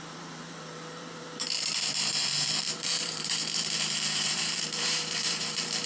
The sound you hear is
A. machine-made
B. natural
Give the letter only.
A